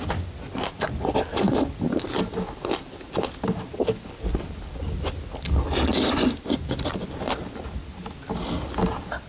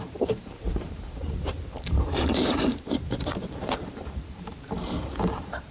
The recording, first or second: first